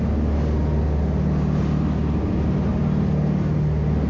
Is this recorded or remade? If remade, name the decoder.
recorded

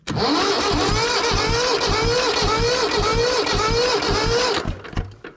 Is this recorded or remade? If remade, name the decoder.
recorded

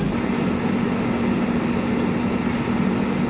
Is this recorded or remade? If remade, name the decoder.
recorded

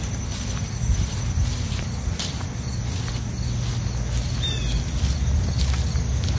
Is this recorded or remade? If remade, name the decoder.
recorded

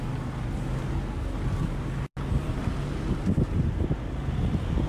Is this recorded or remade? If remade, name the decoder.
recorded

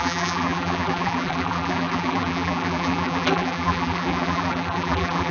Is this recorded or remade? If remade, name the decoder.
remade, vocoder, BigVGAN v2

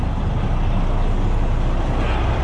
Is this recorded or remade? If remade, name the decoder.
recorded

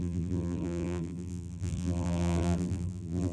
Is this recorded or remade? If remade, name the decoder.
remade, vocoder, BigVGAN v2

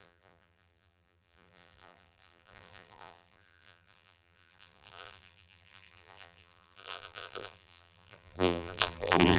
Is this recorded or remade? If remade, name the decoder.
remade, vocoder, BigVGAN v2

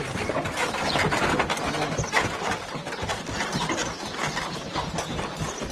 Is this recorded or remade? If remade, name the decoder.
recorded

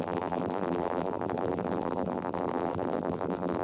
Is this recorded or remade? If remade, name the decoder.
remade, vocoder, BigVGAN v2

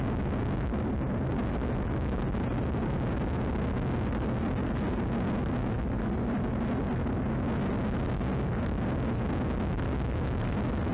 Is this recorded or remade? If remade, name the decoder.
recorded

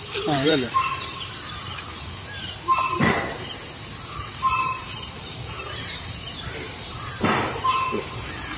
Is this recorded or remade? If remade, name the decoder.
remade, vocoder, BigVGAN v2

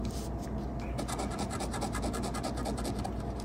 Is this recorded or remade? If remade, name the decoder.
recorded